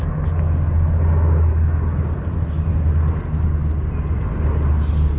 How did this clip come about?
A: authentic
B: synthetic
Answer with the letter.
A